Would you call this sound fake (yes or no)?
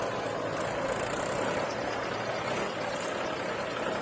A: no